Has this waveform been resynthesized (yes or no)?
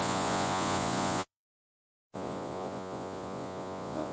yes